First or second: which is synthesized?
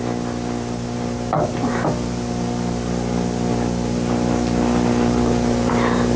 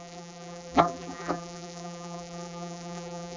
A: second